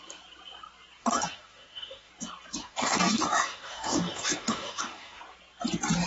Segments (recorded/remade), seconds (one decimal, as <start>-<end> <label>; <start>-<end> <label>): 0.0-1.0 recorded; 1.0-2.1 remade; 2.1-2.6 recorded; 2.6-5.2 remade; 5.2-6.1 recorded